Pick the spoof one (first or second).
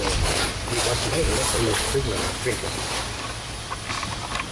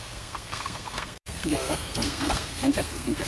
second